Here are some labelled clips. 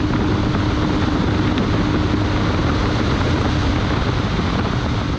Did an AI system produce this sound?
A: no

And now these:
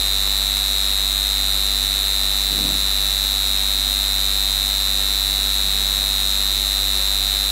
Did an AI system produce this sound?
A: no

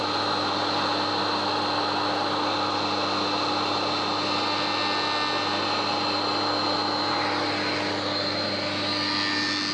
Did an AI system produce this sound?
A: no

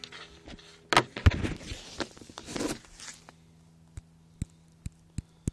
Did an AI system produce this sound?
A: no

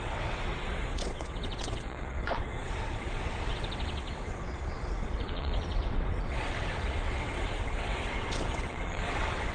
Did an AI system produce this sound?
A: yes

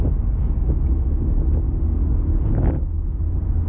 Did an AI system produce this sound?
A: no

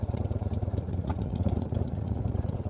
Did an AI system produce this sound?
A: yes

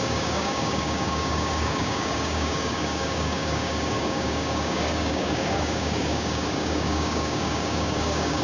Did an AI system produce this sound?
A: yes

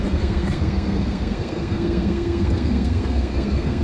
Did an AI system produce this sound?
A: yes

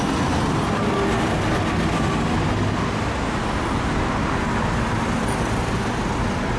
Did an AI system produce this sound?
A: no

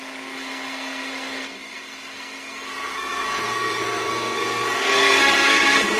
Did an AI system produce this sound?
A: yes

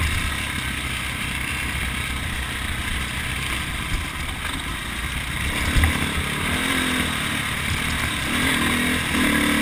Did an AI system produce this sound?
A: no